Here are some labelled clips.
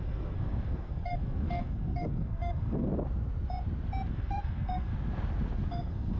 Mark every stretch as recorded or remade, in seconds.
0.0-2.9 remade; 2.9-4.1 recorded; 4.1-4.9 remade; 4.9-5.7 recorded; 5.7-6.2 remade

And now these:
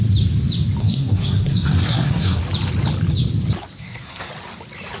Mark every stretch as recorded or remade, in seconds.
0.0-0.8 recorded; 0.8-2.4 remade; 2.4-3.8 recorded; 3.8-4.3 remade; 4.3-5.0 recorded

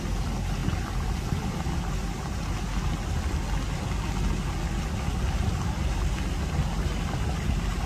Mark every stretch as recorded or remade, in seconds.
0.0-7.9 recorded

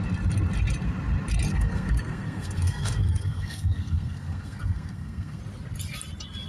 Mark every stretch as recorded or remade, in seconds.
0.0-1.5 recorded; 1.5-5.4 remade; 5.4-6.5 recorded

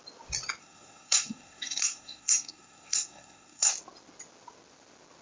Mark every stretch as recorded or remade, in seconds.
0.0-0.6 recorded; 0.6-3.7 remade; 3.7-5.2 recorded

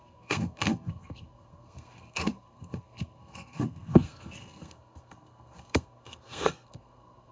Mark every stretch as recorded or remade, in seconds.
0.0-7.3 remade